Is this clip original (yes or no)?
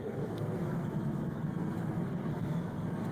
no